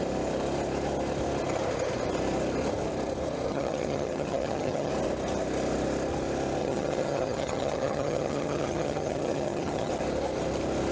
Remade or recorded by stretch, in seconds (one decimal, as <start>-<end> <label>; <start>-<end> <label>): 0.0-3.5 recorded; 3.5-4.9 remade; 4.9-6.6 recorded; 6.6-9.9 remade; 9.9-10.9 recorded